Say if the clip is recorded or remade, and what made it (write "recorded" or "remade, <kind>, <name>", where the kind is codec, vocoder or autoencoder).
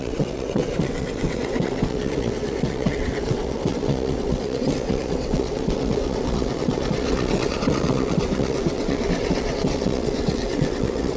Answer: remade, vocoder, WaveNeXt